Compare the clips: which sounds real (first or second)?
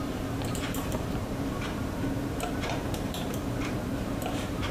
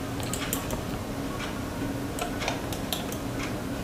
second